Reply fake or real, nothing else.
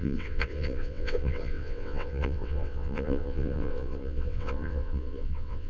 fake